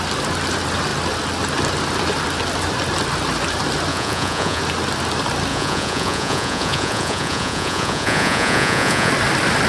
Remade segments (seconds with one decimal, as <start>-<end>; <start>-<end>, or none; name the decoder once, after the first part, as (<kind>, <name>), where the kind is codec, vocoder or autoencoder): 3.9-4.6 (vocoder, Vocos); 5.5-9.1